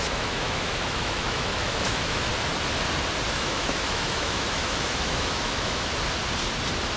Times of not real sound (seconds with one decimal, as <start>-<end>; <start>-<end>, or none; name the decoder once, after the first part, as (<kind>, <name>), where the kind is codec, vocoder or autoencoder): 0.0-2.3 (autoencoder, DAC-VAE); 3.3-5.9